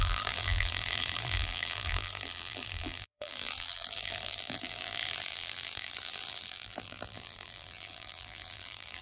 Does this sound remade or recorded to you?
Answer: remade